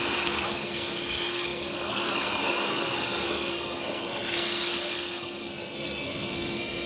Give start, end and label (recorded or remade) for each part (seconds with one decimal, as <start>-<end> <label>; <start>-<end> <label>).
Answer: 0.0-6.9 remade